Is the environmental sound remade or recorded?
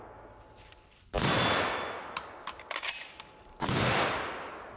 recorded